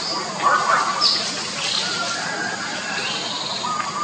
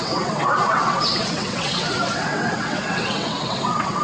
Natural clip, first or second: first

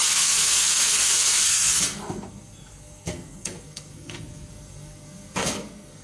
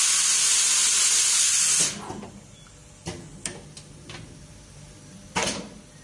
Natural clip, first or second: second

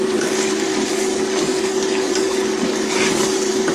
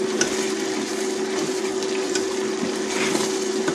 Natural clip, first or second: second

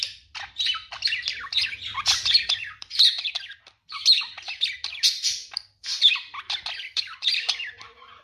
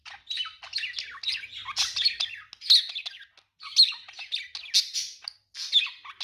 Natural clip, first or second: second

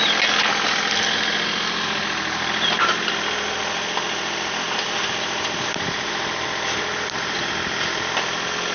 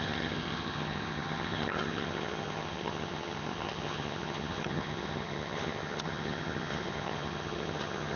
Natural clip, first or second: first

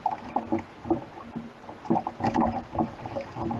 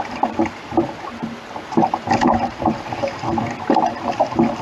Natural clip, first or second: first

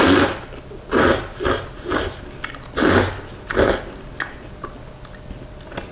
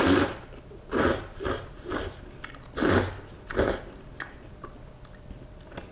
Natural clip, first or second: first